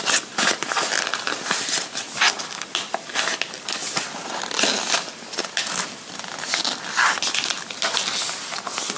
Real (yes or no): yes